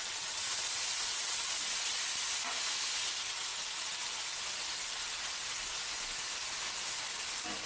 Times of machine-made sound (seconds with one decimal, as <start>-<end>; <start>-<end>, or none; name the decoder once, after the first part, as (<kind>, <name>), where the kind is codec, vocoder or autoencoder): 0.0-2.0 (vocoder, WaveNeXt)